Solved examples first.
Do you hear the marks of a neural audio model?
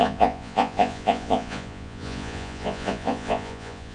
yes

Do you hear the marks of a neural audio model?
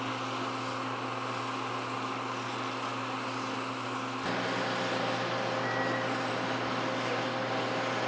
no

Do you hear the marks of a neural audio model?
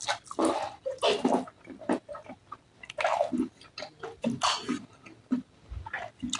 no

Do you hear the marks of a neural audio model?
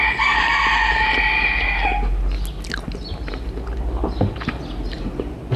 no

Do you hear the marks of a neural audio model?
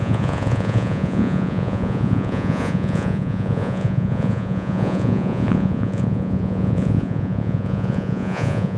yes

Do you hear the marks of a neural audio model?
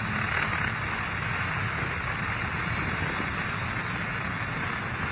no